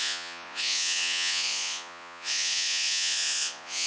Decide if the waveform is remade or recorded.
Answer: remade